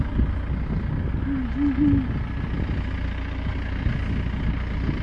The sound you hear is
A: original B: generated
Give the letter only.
A